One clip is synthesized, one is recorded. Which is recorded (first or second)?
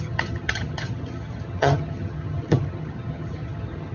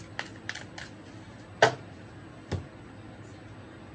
second